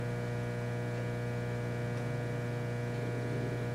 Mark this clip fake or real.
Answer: real